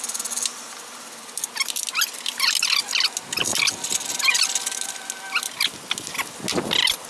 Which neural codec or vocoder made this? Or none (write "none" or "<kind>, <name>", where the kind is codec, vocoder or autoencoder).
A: none